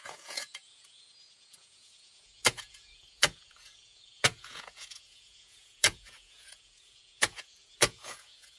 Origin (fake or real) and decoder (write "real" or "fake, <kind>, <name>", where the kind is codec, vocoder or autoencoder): fake, vocoder, Vocos